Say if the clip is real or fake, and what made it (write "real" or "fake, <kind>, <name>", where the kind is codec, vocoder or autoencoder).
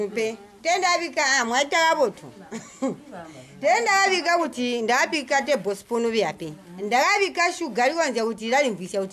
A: real